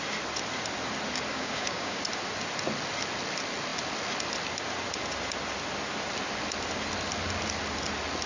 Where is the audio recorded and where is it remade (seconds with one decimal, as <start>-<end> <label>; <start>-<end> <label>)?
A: 0.0-1.3 recorded; 1.3-2.0 remade; 2.0-8.3 recorded

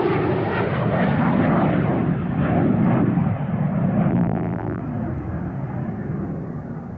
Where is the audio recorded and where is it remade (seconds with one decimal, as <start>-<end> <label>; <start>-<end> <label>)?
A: 0.0-4.1 recorded; 4.1-4.8 remade; 4.8-7.0 recorded

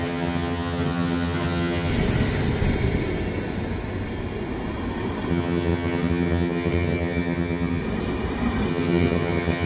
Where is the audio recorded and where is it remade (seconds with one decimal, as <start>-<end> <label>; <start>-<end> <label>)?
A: 0.0-1.9 remade; 1.9-5.3 recorded; 5.3-7.8 remade; 7.8-8.7 recorded; 8.7-9.7 remade